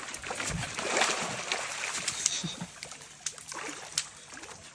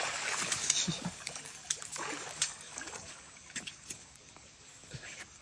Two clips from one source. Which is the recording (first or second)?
first